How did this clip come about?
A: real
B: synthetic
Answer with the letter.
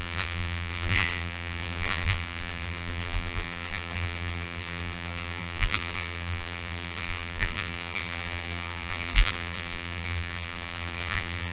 B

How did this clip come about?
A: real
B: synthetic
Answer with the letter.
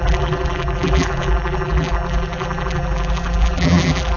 B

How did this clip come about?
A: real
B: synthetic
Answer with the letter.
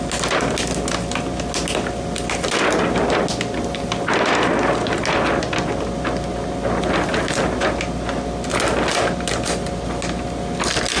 A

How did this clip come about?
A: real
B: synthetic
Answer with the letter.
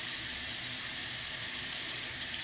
B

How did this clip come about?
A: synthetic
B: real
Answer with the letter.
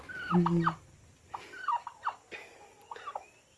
B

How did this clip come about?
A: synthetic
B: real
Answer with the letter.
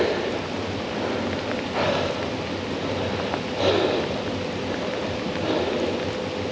B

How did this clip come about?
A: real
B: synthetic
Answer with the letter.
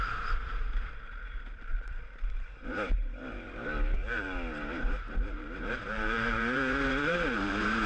B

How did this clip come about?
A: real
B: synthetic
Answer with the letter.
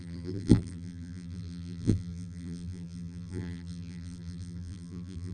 B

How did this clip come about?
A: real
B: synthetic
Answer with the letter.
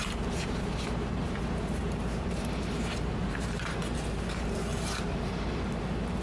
B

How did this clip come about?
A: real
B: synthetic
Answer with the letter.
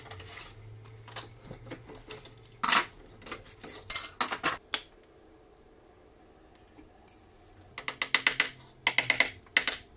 A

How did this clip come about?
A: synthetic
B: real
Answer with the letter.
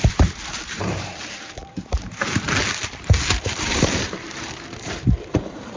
A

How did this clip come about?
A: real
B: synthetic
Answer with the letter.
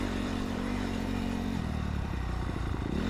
B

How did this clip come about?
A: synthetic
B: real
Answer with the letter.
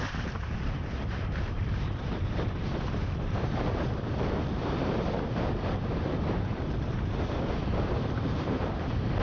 A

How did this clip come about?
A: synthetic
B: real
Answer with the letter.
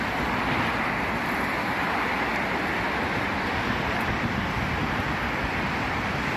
B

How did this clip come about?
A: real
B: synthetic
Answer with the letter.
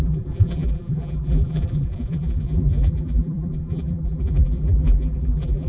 B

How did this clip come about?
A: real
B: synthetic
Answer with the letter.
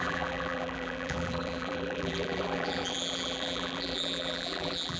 B